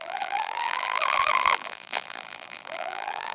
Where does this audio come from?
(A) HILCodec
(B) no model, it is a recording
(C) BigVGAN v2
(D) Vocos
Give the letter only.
C